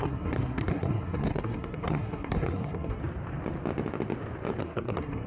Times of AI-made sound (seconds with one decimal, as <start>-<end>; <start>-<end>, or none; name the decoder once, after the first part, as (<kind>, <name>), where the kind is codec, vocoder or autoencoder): 0.0-3.0 (codec, SNAC); 4.6-5.3